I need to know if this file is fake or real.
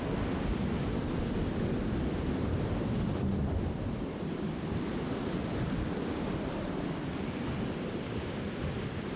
fake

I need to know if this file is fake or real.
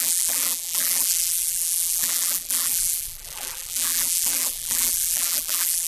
fake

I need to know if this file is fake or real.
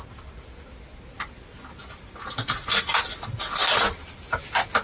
real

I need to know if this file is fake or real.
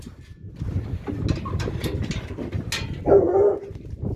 real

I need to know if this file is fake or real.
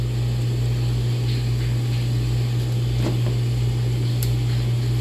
real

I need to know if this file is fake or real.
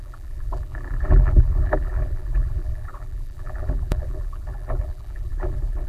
fake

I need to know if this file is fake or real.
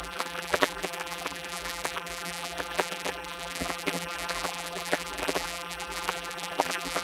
fake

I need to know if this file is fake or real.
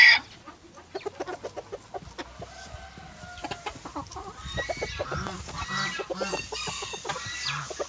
fake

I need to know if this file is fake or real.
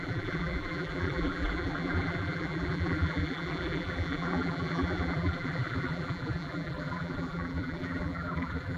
fake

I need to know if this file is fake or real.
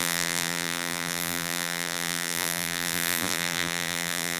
fake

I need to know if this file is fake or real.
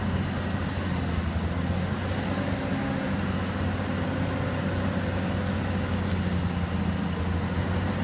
real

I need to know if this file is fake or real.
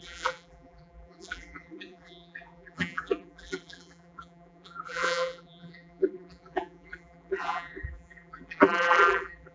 fake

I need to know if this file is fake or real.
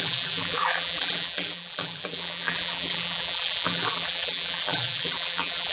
fake